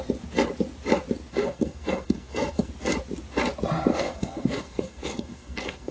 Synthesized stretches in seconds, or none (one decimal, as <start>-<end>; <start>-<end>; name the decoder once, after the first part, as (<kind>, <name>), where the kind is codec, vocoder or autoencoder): 1.3-2.7 (codec, SNAC); 3.9-5.9